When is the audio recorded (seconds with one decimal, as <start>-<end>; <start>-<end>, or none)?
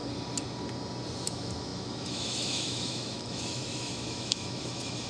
0.0-1.2